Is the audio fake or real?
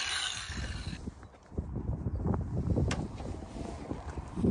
fake